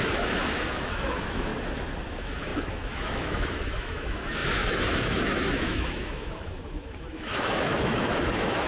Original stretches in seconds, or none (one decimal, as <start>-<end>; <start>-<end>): 1.5-2.1